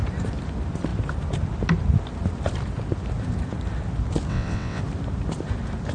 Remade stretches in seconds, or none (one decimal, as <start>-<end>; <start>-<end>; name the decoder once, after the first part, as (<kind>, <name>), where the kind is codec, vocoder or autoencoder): 4.3-4.8 (vocoder, WaveNeXt)